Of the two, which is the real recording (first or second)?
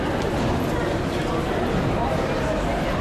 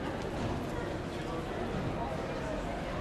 second